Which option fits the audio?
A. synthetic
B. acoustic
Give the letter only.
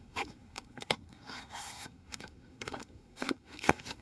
A